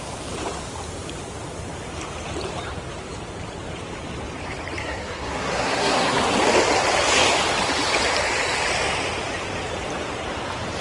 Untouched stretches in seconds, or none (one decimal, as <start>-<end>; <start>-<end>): 0.0-4.8; 6.2-10.8